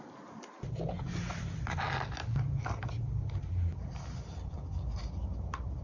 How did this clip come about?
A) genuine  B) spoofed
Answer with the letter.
A